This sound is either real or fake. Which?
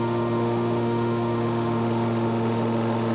fake